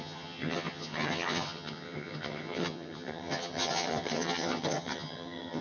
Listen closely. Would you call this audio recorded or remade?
remade